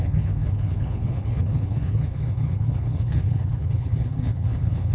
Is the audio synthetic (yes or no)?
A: yes